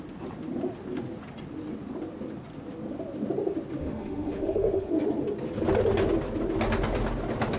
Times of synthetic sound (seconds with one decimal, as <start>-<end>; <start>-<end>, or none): 3.8-4.9